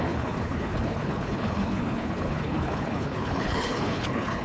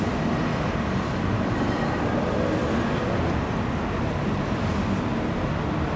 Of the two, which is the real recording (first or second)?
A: second